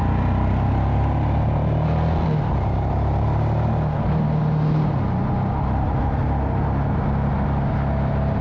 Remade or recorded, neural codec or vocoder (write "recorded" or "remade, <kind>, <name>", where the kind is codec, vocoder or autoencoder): recorded